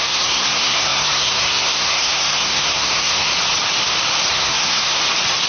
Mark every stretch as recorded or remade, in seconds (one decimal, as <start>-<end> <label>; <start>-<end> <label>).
0.0-3.3 remade; 3.3-4.3 recorded; 4.3-5.0 remade; 5.0-5.5 recorded